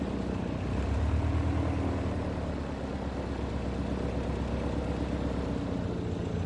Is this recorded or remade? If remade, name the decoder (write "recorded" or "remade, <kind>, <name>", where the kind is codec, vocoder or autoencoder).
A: recorded